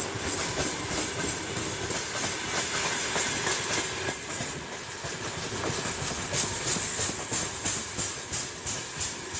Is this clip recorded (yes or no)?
yes